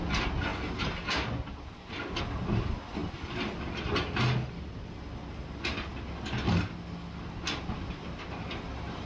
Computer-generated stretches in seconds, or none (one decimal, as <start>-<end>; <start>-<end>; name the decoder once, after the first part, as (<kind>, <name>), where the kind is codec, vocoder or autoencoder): none